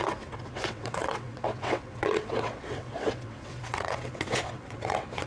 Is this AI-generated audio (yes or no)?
yes